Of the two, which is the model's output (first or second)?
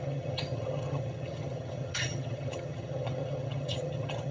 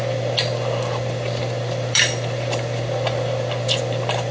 first